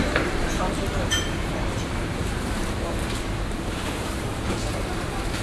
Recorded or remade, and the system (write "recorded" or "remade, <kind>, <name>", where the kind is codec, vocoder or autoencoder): remade, vocoder, BigVGAN v2